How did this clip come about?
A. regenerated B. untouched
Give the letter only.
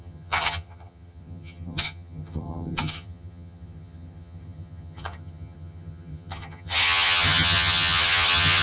A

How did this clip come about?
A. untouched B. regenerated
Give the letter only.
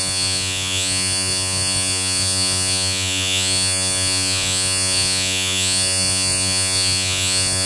B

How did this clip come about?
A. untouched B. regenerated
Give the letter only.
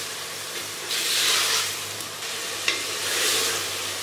B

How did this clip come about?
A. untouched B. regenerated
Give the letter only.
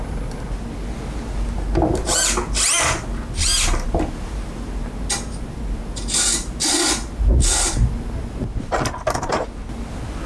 A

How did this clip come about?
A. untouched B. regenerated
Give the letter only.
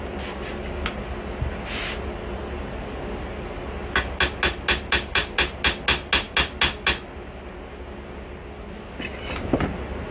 A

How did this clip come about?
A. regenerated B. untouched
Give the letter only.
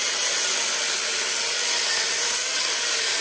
B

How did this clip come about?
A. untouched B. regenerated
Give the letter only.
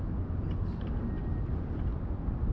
A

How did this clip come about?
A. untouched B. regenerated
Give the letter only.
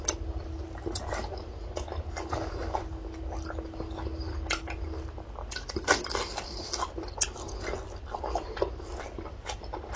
A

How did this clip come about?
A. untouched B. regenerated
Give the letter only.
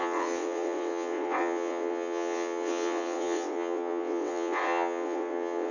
B